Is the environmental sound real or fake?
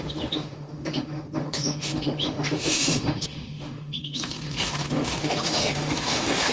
fake